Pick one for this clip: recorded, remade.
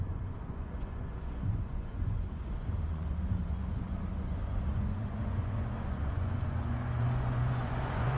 remade